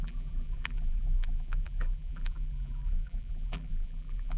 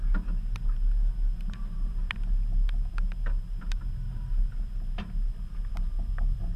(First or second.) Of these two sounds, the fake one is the first